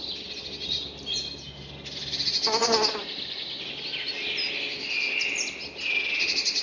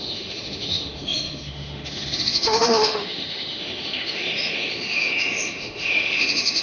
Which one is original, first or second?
first